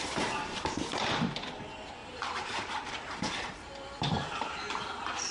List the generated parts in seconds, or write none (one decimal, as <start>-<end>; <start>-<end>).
2.0-5.3